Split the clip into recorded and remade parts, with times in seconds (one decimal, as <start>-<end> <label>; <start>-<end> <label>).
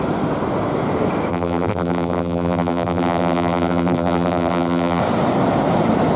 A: 0.0-1.3 recorded; 1.3-5.0 remade; 5.0-6.2 recorded